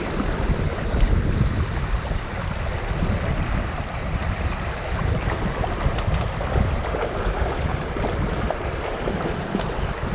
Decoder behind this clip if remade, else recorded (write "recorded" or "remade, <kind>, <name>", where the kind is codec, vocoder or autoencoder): recorded